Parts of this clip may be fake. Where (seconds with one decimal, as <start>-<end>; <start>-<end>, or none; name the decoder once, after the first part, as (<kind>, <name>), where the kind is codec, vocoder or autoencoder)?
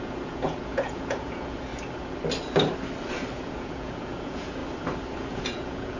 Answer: 0.0-1.7 (vocoder, Vocos); 3.3-4.6; 5.3-6.0